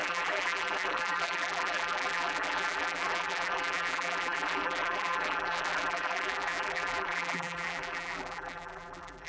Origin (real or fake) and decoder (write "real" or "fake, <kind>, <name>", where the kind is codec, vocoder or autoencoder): fake, vocoder, BigVGAN v2